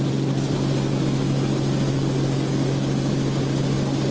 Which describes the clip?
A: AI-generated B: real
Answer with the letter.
B